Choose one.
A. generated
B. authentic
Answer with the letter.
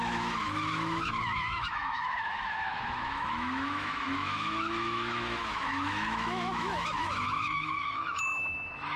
A